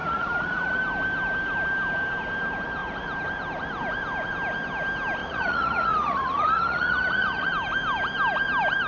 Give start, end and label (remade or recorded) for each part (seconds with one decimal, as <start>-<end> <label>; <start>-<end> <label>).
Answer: 0.0-0.8 remade; 0.8-5.2 recorded; 5.2-7.5 remade; 7.5-8.9 recorded